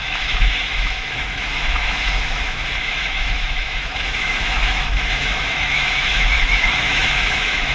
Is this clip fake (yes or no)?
yes